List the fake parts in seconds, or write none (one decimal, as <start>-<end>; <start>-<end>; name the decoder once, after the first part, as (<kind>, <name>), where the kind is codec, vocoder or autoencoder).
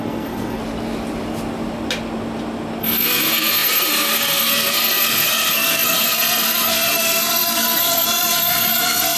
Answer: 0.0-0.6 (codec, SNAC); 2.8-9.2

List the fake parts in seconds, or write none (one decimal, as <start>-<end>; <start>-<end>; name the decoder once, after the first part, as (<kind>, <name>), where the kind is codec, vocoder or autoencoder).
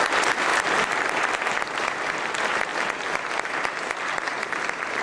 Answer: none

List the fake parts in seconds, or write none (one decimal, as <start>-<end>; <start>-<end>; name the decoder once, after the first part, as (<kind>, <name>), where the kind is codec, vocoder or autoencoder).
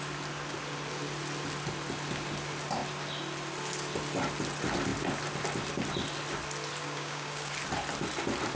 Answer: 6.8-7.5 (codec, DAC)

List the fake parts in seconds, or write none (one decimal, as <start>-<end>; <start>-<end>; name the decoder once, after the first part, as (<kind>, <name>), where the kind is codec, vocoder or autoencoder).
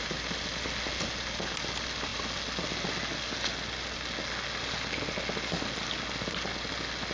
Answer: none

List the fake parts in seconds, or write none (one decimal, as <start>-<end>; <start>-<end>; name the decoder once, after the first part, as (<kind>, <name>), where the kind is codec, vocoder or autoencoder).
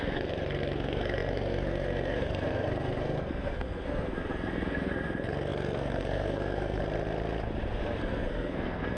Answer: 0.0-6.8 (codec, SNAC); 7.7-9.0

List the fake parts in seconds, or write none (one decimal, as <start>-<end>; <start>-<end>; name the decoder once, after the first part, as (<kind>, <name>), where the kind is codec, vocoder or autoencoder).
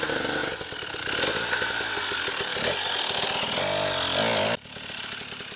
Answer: none